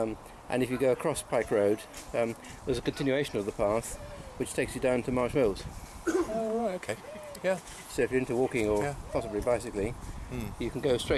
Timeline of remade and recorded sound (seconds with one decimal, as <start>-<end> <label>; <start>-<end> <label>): 0.0-6.3 recorded; 6.3-7.9 remade; 7.9-11.2 recorded